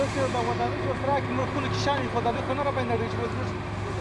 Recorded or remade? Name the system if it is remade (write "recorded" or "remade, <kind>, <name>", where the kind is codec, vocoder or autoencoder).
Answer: recorded